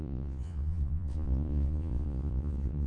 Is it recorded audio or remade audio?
remade